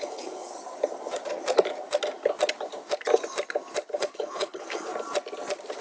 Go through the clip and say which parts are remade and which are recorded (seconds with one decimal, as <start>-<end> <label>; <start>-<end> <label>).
0.0-0.5 remade; 0.5-4.0 recorded; 4.0-4.9 remade; 4.9-5.8 recorded